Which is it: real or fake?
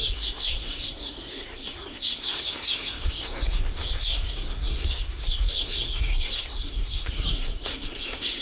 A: fake